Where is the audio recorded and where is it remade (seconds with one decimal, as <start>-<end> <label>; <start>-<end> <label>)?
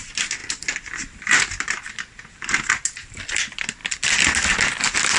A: 0.0-5.2 recorded